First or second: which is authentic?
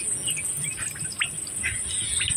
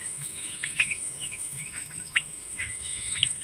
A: first